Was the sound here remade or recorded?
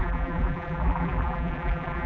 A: remade